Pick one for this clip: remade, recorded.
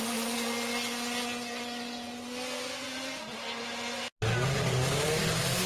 recorded